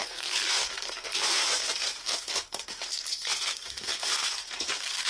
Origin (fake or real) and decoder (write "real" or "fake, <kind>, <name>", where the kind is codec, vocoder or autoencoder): fake, codec, SNAC